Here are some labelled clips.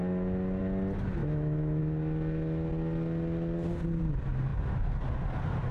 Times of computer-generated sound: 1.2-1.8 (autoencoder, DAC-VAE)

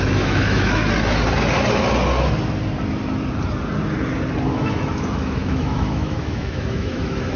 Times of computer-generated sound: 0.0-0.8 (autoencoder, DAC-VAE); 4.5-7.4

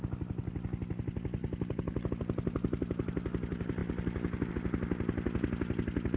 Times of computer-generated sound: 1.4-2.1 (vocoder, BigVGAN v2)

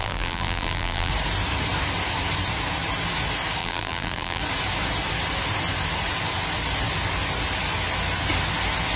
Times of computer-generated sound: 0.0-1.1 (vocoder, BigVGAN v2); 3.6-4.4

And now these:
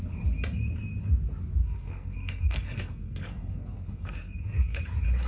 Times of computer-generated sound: 1.6-4.8 (codec, SNAC)

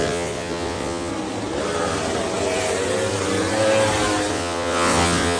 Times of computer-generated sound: 0.0-1.1 (vocoder, WaveNeXt); 4.3-5.4

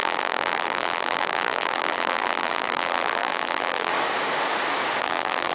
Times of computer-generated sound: 0.0-3.9 (vocoder, BigVGAN v2); 5.0-5.5